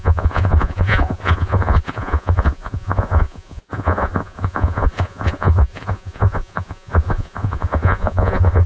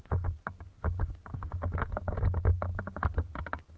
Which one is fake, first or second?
first